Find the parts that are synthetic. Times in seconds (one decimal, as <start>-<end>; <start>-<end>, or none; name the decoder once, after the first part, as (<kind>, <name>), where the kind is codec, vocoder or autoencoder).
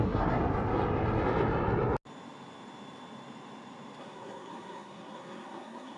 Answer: 0.0-0.4 (codec, SNAC); 4.0-6.0